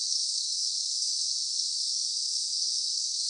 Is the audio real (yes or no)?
no